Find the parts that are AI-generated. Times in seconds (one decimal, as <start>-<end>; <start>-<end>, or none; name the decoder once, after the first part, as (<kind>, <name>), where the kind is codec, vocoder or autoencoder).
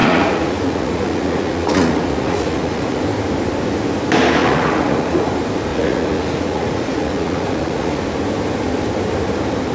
0.0-3.0 (vocoder, Vocos); 4.4-5.3; 5.7-8.0